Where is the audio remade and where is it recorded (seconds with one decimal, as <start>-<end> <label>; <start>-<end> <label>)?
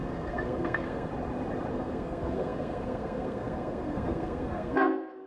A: 0.0-1.1 remade; 1.1-1.7 recorded; 1.7-5.3 remade